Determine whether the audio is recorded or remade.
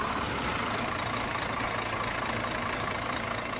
recorded